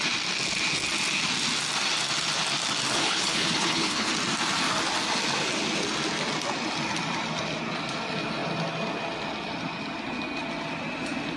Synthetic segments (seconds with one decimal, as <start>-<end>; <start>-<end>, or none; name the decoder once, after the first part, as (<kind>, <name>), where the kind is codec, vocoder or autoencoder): 2.9-4.1 (codec, HILCodec)